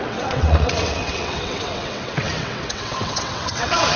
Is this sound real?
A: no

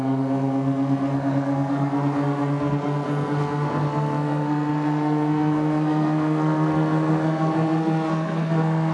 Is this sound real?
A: no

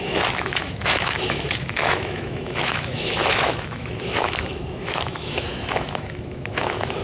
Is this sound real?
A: no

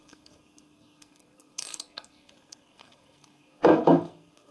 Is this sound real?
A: no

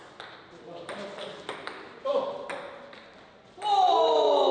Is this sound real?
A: yes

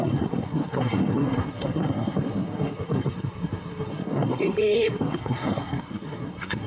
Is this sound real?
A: no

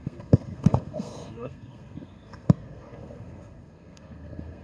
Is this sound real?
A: no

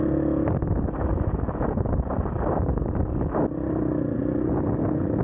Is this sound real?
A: yes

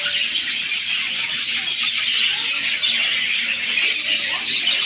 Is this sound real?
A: yes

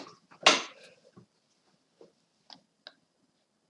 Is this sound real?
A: yes